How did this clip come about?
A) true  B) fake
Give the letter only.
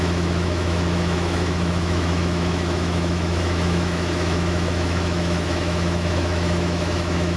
B